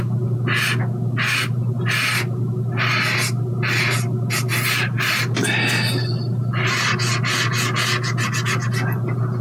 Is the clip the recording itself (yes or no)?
yes